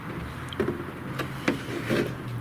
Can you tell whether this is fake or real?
real